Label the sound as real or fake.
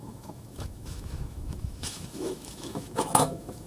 fake